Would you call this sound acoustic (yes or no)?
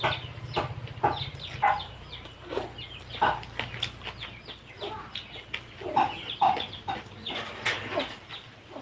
yes